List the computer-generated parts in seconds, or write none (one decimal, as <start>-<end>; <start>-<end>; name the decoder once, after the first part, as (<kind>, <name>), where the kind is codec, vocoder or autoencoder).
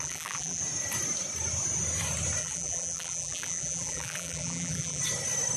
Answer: 0.0-0.6 (vocoder, BigVGAN v2); 2.4-5.0